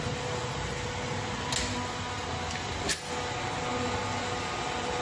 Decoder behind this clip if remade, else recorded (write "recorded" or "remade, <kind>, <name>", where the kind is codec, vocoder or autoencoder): recorded